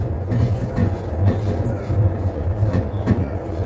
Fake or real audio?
fake